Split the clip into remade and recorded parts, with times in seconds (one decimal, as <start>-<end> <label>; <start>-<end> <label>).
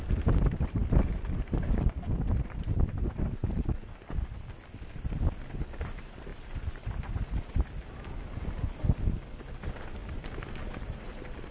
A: 0.0-6.3 recorded; 6.3-7.9 remade; 7.9-10.0 recorded; 10.0-10.5 remade; 10.5-11.5 recorded